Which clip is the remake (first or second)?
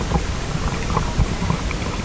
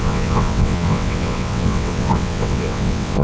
second